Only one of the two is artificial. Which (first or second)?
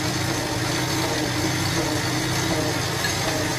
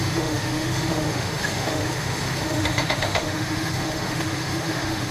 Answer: second